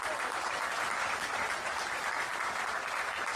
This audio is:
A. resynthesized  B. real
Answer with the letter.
B